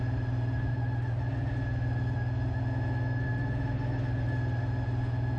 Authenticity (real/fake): real